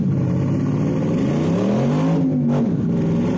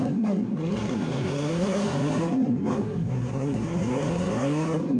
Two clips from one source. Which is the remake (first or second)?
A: second